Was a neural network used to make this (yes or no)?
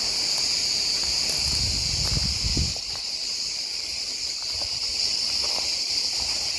no